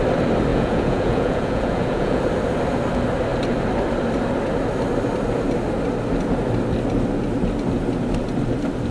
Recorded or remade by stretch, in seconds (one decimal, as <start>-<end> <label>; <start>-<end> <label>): 0.0-0.5 recorded; 0.5-2.2 remade; 2.2-8.9 recorded